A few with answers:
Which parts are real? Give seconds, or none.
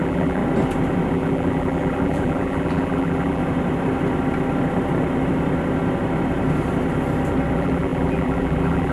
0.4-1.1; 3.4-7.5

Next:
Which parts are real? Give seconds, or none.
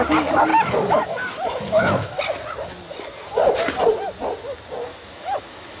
0.0-0.5; 2.2-4.9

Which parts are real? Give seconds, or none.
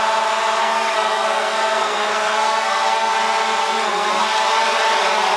0.0-0.6; 3.1-3.6; 4.1-5.4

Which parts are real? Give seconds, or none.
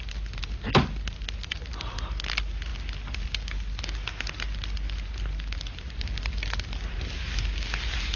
0.0-8.2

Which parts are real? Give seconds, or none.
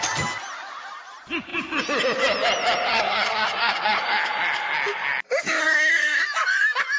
0.0-2.9; 4.0-5.6; 6.2-7.0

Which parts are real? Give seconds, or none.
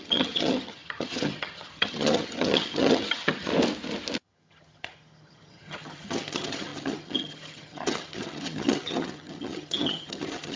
3.5-4.2